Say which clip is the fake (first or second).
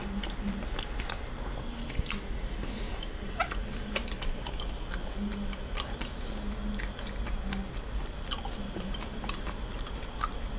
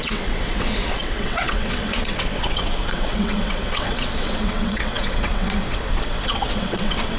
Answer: second